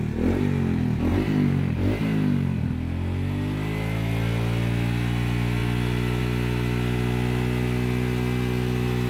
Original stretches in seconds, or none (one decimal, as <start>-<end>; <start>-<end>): 0.0-1.1; 2.6-9.1